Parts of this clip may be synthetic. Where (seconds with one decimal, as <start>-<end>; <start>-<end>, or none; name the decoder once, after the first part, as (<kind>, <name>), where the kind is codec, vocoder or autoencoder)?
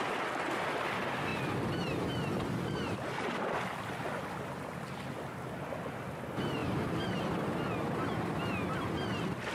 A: 1.3-2.1 (vocoder, BigVGAN v2); 6.6-7.2